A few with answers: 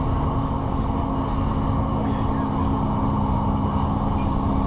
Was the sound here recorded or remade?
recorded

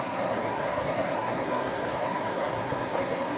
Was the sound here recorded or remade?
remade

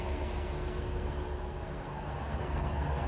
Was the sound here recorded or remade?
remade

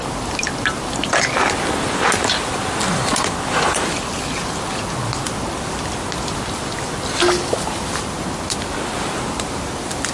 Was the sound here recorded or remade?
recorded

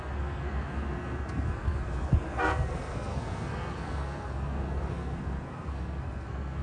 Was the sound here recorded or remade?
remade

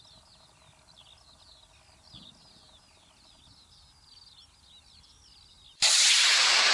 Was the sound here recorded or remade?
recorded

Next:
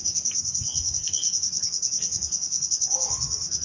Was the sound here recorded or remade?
remade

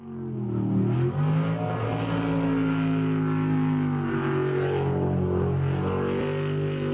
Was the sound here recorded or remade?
recorded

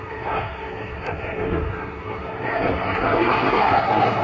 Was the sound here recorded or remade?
remade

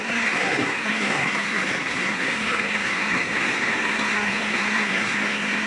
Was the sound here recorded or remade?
remade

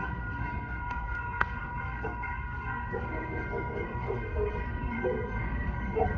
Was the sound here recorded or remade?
remade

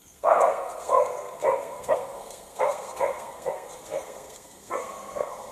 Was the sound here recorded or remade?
remade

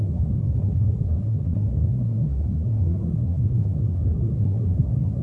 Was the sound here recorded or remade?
remade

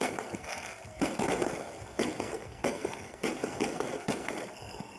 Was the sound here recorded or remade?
remade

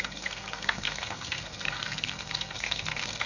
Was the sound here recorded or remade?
remade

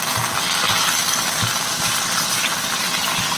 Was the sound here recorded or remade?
recorded